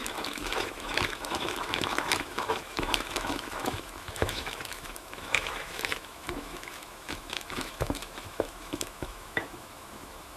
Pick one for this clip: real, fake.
fake